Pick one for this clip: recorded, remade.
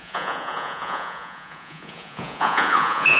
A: remade